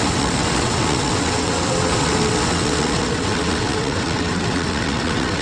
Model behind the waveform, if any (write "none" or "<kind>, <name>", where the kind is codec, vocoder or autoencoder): vocoder, WaveNeXt